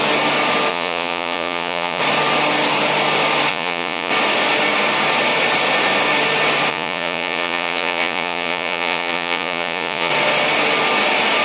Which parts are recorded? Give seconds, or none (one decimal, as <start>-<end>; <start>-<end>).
0.0-0.7; 2.0-3.5; 4.1-6.7; 10.1-11.4